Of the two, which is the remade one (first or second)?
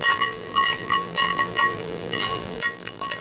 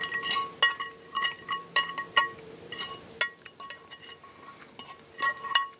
first